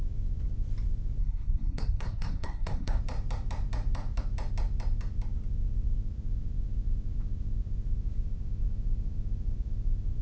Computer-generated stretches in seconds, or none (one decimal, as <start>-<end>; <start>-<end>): 1.2-3.0